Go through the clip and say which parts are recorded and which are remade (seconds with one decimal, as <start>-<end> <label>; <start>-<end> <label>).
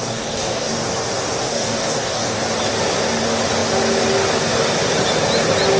0.0-0.7 remade; 0.7-1.4 recorded; 1.4-2.4 remade; 2.4-5.8 recorded